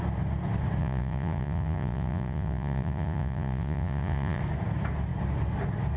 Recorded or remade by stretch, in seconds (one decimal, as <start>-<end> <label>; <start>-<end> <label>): 0.0-0.8 recorded; 0.8-4.4 remade; 4.4-6.0 recorded